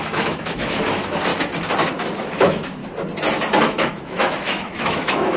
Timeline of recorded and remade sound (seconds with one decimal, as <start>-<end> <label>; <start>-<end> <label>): 0.0-1.3 remade; 1.3-2.0 recorded; 2.0-2.8 remade; 2.8-3.6 recorded; 3.6-5.4 remade